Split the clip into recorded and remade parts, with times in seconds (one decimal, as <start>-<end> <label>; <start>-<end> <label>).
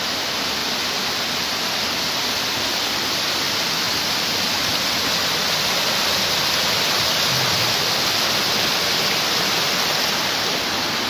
0.0-11.1 recorded